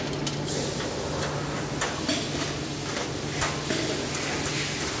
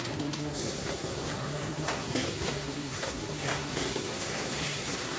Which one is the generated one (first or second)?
second